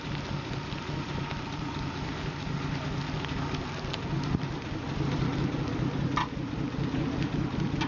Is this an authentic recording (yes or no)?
yes